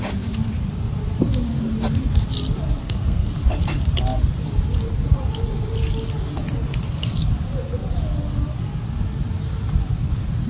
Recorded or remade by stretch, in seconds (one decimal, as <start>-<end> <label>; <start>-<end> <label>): 0.0-2.8 recorded; 2.8-3.3 remade; 3.3-10.5 recorded